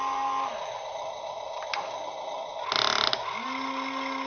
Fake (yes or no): no